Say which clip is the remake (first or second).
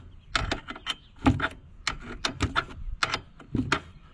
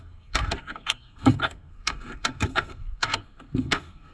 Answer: second